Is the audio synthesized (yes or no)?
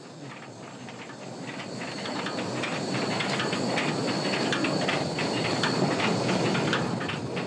no